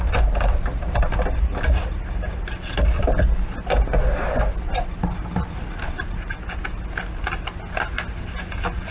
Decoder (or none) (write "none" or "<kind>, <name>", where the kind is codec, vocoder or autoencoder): none